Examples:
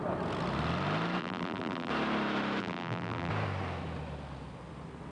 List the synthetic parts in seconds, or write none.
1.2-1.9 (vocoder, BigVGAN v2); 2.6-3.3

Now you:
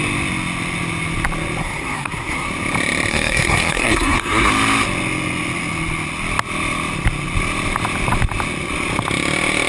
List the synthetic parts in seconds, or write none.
1.6-2.5 (codec, SNAC); 3.1-4.5

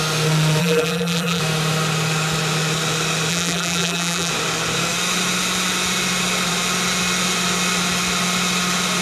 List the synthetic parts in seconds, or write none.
0.6-1.4 (vocoder, BigVGAN v2); 3.3-4.3

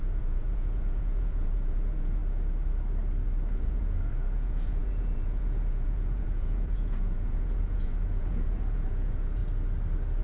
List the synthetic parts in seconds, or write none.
0.0-2.2 (vocoder, Vocos); 3.5-9.4

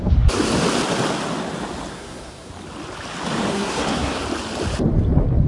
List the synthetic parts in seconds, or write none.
1.9-2.5 (codec, SNAC); 3.5-4.2

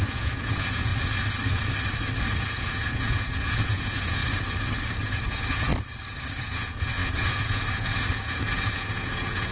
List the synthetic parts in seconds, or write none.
0.0-0.9 (vocoder, Vocos); 2.4-4.2; 5.0-5.7; 6.4-9.5

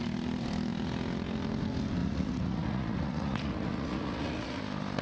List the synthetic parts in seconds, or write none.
2.0-4.6 (vocoder, Vocos)